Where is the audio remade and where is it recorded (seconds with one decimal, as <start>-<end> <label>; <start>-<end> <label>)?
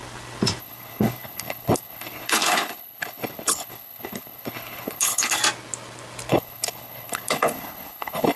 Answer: 0.0-0.6 recorded; 0.6-5.4 remade; 5.4-6.3 recorded; 6.3-8.4 remade